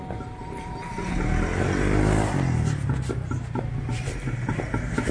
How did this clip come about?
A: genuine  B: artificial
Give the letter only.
A